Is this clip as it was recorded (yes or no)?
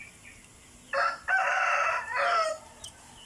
yes